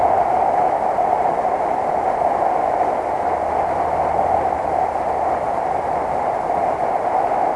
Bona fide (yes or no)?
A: yes